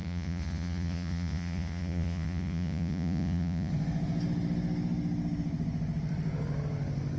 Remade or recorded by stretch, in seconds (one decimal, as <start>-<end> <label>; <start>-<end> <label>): 0.0-3.7 remade; 3.7-7.2 recorded